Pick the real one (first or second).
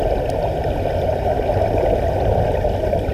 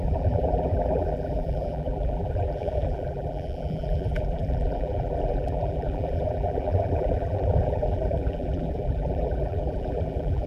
first